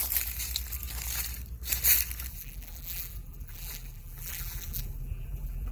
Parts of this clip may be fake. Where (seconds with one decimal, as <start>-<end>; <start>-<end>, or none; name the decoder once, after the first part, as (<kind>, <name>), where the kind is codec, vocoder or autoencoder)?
2.3-5.7 (vocoder, BigVGAN v2)